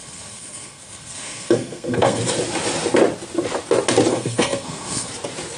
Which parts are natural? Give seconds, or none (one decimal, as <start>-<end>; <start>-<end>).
2.2-4.1; 5.1-5.6